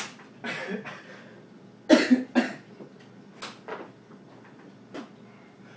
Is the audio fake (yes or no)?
no